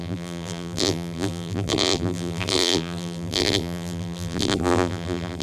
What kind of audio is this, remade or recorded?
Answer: remade